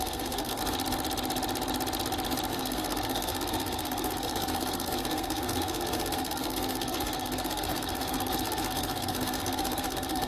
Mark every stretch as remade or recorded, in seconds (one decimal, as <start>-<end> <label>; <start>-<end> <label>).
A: 0.0-0.6 remade; 0.6-2.5 recorded; 2.5-10.3 remade